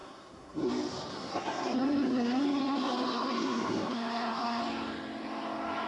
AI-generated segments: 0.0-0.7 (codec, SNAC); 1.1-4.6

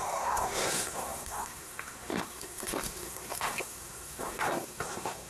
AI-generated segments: 0.0-5.3 (codec, SNAC)

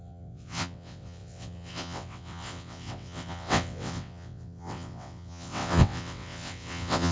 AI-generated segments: 0.0-7.1 (vocoder, WaveNeXt)

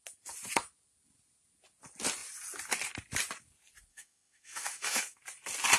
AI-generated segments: 3.9-5.2 (autoencoder, DAC-VAE)

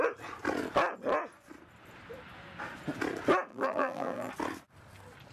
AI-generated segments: 3.5-4.3 (vocoder, BigVGAN v2)

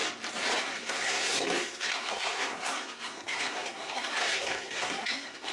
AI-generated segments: 0.6-5.5 (codec, SNAC)